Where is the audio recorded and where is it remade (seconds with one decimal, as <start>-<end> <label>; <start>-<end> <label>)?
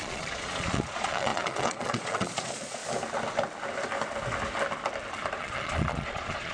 0.0-2.8 remade; 2.8-5.4 recorded; 5.4-6.5 remade